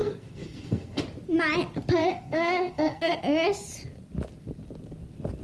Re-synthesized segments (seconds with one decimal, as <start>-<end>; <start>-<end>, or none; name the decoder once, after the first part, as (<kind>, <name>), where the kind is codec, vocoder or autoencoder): 0.0-1.0 (codec, SNAC); 2.0-3.2